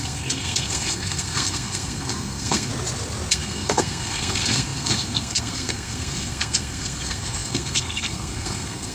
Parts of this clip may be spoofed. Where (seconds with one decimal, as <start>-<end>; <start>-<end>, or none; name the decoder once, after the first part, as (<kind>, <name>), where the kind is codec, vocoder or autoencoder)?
0.0-2.7 (codec, SNAC); 3.3-8.9